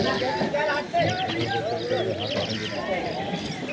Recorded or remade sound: recorded